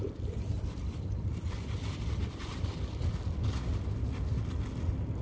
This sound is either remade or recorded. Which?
recorded